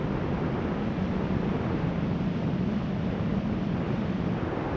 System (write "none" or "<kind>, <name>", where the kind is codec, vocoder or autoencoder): none